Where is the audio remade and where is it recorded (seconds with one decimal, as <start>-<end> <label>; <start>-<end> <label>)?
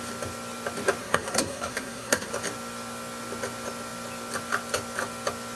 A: 0.0-1.0 recorded; 1.0-2.3 remade; 2.3-5.6 recorded